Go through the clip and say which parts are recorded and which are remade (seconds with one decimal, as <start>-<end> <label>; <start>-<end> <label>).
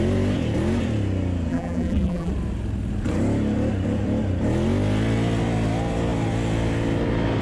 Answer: 0.0-1.5 recorded; 1.5-2.3 remade; 2.3-7.4 recorded